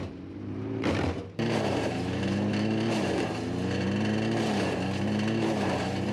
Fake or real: fake